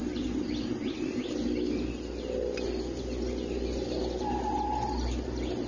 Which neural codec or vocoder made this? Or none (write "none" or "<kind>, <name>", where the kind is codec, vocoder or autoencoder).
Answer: none